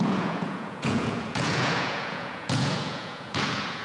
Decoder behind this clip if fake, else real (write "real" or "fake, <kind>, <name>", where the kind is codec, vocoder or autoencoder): fake, vocoder, Vocos